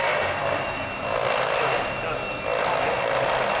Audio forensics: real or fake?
real